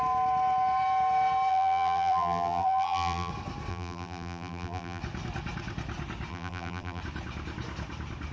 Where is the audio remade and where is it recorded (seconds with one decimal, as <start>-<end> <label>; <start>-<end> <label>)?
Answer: 0.0-1.5 recorded; 1.5-3.3 remade; 3.3-3.7 recorded; 3.7-5.0 remade; 5.0-6.3 recorded; 6.3-7.0 remade; 7.0-8.3 recorded